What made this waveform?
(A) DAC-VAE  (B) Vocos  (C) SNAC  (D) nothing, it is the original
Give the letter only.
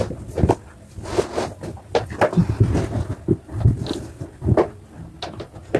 D